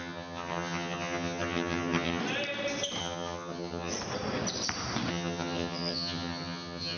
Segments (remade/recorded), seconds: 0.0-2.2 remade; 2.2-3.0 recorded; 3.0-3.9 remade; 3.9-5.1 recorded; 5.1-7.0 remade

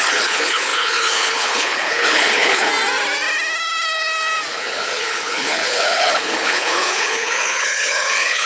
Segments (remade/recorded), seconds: 0.0-2.7 remade; 2.7-4.5 recorded; 4.5-8.5 remade

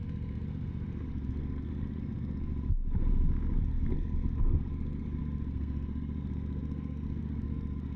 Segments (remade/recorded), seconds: 0.0-2.5 remade; 2.5-3.6 recorded; 3.6-8.0 remade

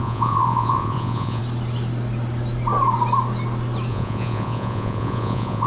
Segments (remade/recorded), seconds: 0.0-1.4 remade; 1.4-3.9 recorded; 3.9-5.7 remade

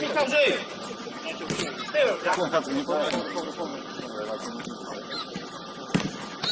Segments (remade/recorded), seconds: 0.0-6.5 recorded

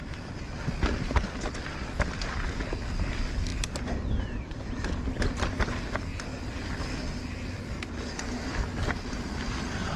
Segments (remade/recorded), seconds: 0.0-10.0 recorded

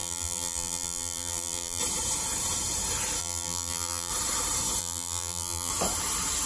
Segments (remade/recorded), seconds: 0.0-1.8 remade; 1.8-3.2 recorded; 3.2-4.1 remade; 4.1-4.8 recorded; 4.8-5.7 remade; 5.7-6.5 recorded